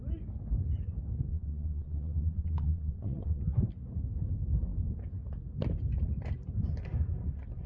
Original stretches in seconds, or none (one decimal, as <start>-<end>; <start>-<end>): 0.0-1.3; 3.4-7.7